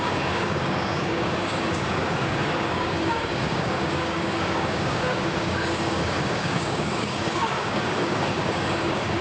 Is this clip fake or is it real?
fake